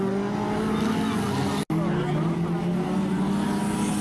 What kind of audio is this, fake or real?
real